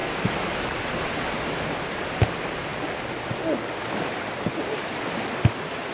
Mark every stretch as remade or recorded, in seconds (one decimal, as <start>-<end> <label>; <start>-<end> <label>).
0.0-0.7 remade; 0.7-5.9 recorded